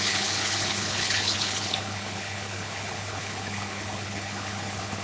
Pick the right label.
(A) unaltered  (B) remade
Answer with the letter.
B